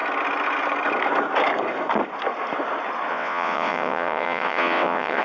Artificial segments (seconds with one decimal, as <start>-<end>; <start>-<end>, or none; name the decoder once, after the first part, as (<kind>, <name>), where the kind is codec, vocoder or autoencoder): 3.1-5.2 (vocoder, WaveNeXt)